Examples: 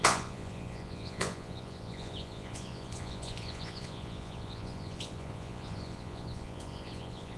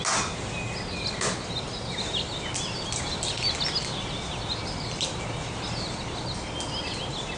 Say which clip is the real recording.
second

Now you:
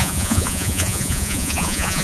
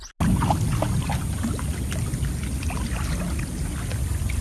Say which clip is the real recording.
second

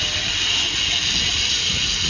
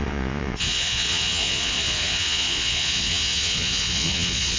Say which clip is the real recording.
first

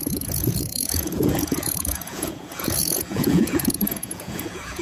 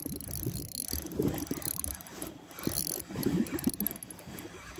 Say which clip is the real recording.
second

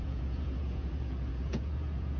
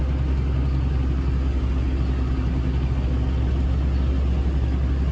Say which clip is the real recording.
second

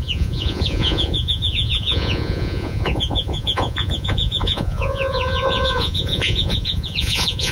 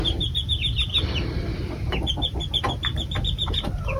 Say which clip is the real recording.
second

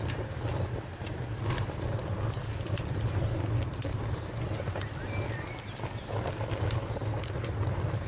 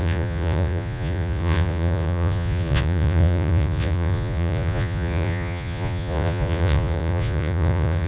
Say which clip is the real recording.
first